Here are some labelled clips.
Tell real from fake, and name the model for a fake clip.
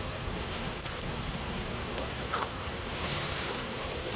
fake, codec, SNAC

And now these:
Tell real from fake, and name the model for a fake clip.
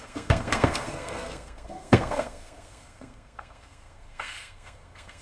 fake, codec, SNAC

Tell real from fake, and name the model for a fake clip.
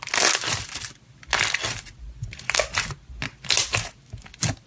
real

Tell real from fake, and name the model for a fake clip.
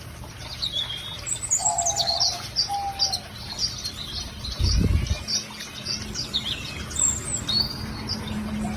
real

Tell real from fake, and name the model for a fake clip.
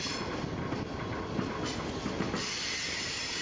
real